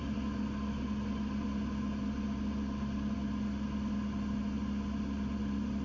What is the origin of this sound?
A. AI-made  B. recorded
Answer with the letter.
B